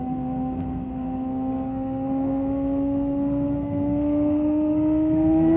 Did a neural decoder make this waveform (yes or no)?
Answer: yes